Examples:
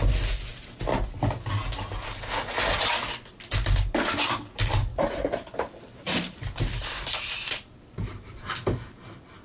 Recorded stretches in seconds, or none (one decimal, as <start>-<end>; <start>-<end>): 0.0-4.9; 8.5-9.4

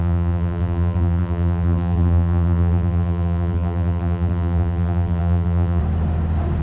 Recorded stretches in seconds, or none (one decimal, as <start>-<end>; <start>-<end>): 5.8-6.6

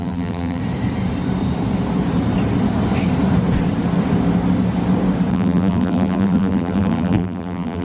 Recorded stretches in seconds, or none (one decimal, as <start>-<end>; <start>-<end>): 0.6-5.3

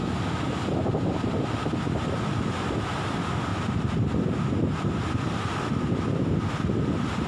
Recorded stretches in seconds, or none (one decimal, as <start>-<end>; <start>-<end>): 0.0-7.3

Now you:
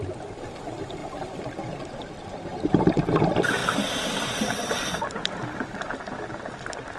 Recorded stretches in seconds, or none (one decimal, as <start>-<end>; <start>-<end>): 0.0-1.0; 2.0-3.6

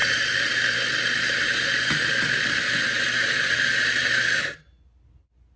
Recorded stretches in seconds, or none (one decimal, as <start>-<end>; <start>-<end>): 0.0-5.6